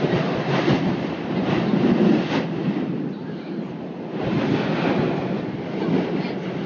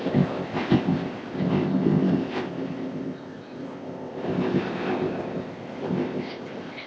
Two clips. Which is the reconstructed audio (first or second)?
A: second